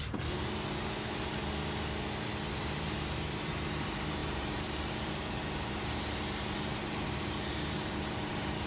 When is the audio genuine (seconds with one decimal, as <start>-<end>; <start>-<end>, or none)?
1.4-2.5